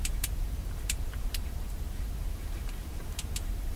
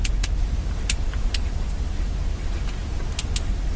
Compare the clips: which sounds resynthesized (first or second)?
first